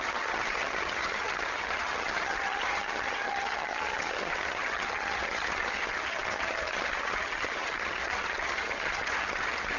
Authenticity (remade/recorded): remade